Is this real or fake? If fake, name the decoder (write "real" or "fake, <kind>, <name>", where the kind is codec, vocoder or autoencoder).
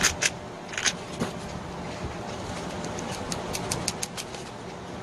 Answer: real